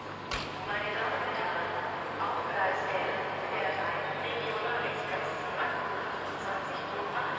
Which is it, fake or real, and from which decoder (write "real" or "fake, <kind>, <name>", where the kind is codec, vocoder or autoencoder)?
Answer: real